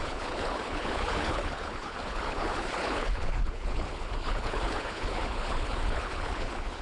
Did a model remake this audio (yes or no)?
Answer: yes